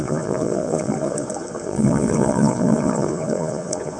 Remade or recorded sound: remade